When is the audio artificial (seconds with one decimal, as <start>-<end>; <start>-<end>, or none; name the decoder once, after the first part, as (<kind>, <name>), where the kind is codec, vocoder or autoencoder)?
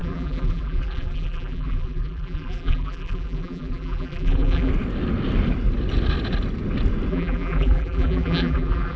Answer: 0.0-4.7 (vocoder, BigVGAN v2); 7.1-9.0